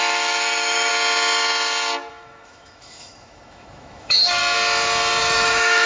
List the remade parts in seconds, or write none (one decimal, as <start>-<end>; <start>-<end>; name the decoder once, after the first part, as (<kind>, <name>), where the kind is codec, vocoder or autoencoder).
0.0-0.9 (autoencoder, DAC-VAE); 2.1-4.4; 5.2-5.9